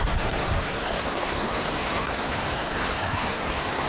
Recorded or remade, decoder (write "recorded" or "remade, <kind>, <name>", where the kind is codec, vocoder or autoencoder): remade, codec, SNAC